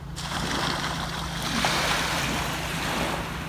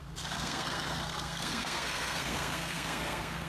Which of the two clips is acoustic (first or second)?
first